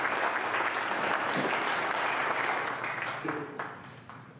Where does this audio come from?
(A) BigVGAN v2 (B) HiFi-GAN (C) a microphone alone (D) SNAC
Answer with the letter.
C